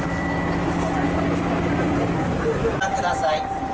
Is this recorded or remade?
recorded